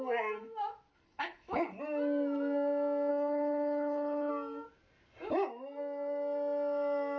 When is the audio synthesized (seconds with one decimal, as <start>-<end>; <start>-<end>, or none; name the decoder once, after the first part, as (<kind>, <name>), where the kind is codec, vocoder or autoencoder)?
0.9-1.8 (codec, HILCodec); 3.1-4.3